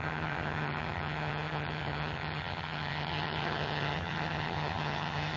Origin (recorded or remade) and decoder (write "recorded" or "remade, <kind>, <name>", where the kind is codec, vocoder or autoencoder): remade, vocoder, HiFi-GAN